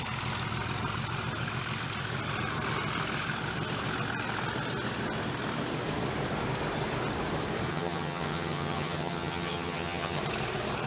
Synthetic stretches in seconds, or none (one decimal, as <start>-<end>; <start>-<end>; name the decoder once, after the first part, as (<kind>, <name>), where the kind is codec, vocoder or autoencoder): 7.7-10.2 (vocoder, HiFi-GAN)